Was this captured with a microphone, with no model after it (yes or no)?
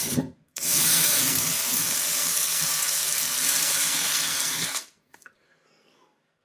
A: no